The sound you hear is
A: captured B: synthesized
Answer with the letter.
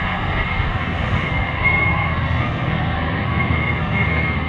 B